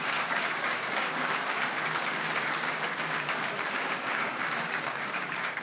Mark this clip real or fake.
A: fake